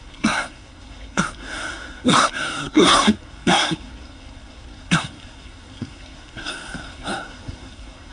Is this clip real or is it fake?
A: fake